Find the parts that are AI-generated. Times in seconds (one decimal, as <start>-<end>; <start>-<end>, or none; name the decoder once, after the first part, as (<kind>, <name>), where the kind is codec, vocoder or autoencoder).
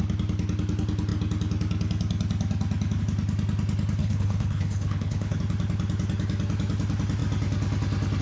4.0-5.4 (codec, HILCodec)